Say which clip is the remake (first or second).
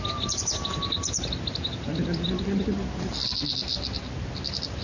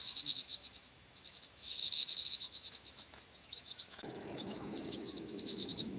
second